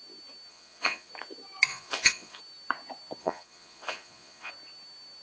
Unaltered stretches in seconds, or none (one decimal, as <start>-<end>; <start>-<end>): 0.0-0.5; 1.1-1.7; 2.4-3.2; 4.5-5.2

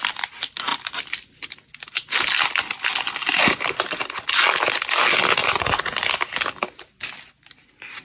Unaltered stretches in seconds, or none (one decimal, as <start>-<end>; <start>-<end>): 0.0-5.4; 5.9-8.0